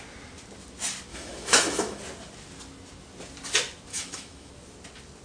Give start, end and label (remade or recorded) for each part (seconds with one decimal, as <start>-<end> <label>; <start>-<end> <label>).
0.0-1.1 recorded; 1.1-2.0 remade; 2.0-3.9 recorded; 3.9-4.5 remade; 4.5-5.2 recorded